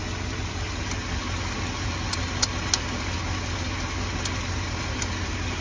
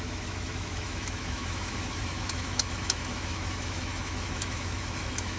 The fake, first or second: second